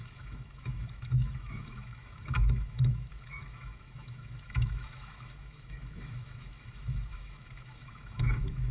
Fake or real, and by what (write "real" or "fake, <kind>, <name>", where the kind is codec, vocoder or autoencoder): fake, autoencoder, DAC-VAE